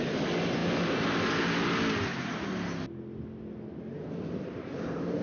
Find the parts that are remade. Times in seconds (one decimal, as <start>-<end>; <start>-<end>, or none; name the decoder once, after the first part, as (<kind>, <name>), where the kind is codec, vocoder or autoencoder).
none